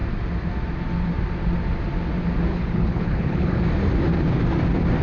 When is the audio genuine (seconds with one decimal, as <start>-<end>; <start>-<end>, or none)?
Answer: 0.0-2.5; 3.6-5.0